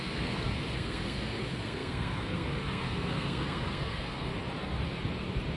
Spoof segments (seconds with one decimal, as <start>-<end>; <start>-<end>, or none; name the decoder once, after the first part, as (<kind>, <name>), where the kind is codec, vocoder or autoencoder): 0.0-4.3 (codec, SNAC)